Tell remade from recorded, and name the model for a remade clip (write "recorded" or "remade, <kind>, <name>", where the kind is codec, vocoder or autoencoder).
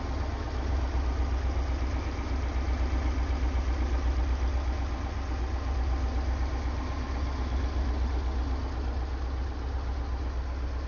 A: recorded